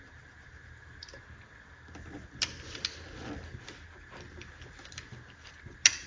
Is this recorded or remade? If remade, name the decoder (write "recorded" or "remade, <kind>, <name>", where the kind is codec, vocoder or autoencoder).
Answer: recorded